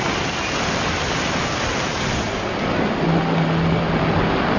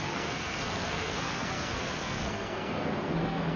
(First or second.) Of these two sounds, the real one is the first